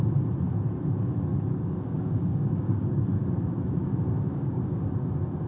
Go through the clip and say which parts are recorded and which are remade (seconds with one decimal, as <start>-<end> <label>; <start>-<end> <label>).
0.0-1.3 recorded; 1.3-3.5 remade; 3.5-4.3 recorded; 4.3-5.0 remade; 5.0-5.5 recorded